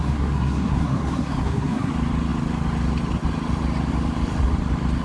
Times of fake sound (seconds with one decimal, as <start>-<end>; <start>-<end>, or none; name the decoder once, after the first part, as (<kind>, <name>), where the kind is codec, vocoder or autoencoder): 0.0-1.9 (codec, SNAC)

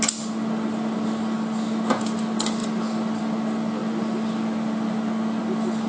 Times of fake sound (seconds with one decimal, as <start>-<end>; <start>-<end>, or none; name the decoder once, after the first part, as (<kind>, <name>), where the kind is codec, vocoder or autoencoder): none

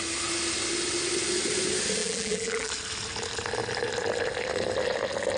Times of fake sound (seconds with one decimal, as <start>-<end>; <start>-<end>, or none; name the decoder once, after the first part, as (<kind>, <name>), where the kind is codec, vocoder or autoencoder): 2.0-2.7 (vocoder, BigVGAN v2)

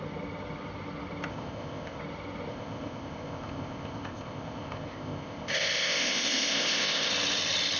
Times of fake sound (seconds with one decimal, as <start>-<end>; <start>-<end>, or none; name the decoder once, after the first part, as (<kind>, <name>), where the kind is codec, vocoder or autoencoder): 1.3-2.0 (codec, ZipCodec); 2.5-7.1

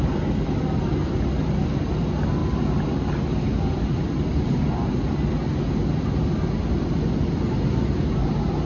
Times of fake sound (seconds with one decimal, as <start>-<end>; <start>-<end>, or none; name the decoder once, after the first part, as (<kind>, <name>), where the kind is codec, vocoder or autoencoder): none